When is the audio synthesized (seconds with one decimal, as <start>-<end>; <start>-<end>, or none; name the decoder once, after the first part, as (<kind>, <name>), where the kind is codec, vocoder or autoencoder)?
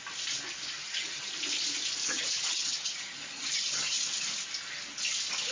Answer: 0.8-1.4 (vocoder, HiFi-GAN); 2.0-4.0